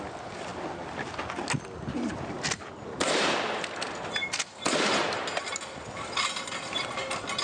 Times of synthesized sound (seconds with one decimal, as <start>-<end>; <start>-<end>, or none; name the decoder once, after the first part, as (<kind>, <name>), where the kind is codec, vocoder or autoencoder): none